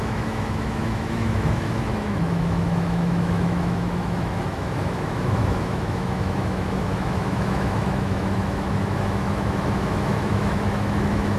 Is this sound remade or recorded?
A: remade